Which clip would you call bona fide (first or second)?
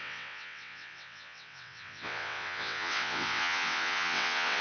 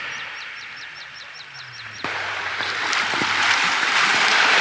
second